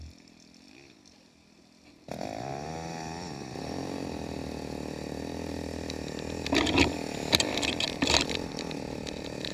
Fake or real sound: real